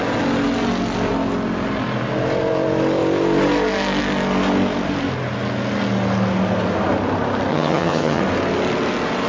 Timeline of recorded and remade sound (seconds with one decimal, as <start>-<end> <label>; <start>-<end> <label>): 0.0-7.5 recorded; 7.5-8.2 remade; 8.2-9.3 recorded